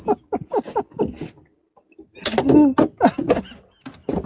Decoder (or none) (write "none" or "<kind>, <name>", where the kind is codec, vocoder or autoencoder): none